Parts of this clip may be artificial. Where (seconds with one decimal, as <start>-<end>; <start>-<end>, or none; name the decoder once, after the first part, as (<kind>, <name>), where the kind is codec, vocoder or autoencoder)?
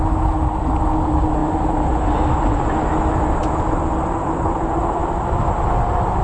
none